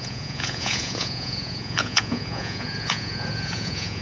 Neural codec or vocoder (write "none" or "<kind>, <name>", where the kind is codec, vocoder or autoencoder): vocoder, Vocos